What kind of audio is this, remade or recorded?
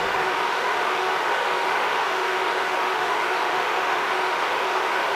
remade